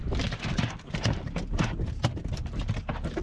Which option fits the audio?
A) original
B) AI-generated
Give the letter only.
A